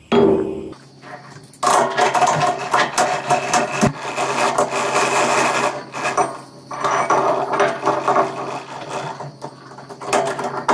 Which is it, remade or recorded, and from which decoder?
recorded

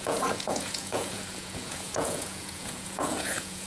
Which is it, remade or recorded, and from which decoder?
remade, vocoder, Vocos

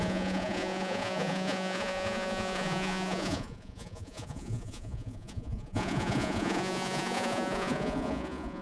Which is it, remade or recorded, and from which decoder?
remade, vocoder, Vocos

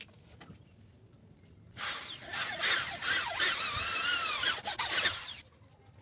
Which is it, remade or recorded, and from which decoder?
recorded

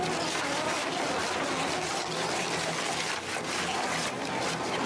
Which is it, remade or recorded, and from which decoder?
recorded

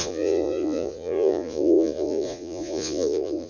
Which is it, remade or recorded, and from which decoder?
remade, vocoder, Vocos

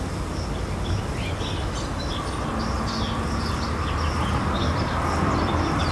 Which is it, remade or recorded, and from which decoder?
recorded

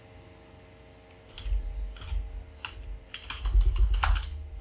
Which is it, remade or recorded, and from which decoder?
recorded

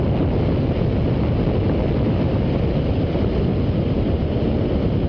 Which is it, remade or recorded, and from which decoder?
recorded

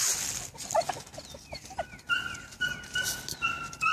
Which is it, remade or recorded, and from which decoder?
recorded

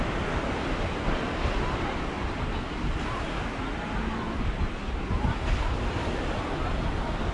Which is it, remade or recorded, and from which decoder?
recorded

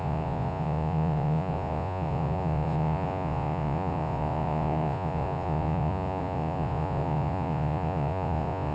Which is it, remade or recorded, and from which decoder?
remade, vocoder, Vocos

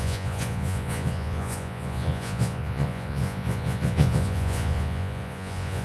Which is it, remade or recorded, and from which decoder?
remade, vocoder, Vocos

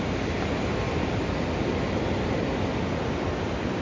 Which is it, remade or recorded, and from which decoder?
recorded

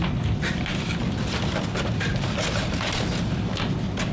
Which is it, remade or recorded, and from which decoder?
recorded